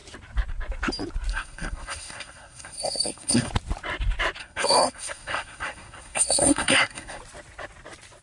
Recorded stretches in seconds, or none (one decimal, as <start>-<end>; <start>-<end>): 0.0-1.3; 3.5-4.4; 7.2-8.2

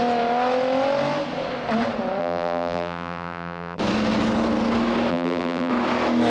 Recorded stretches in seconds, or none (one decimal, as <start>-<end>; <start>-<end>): 0.0-2.2; 3.8-5.1; 5.7-6.3

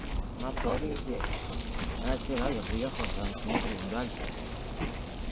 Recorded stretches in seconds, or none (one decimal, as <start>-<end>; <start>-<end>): 0.0-0.6; 1.5-5.3

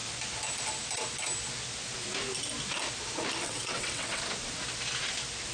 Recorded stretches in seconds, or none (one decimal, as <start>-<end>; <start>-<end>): 0.0-3.4; 4.2-5.5

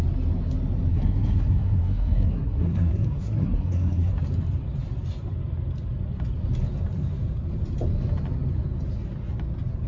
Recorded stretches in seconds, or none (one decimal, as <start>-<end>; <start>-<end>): 0.0-0.9; 4.1-9.9